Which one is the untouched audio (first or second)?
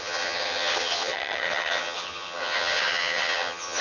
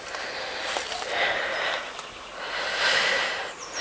second